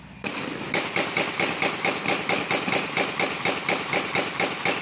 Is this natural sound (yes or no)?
yes